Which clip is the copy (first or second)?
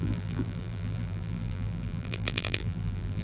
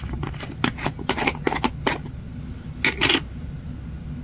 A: first